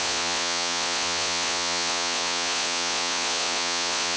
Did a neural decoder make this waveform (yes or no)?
yes